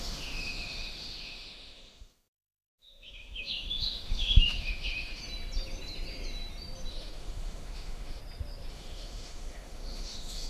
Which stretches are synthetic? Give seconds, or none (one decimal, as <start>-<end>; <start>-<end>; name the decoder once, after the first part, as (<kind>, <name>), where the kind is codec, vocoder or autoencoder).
0.0-5.2 (autoencoder, DAC-VAE); 6.9-8.2; 8.7-10.5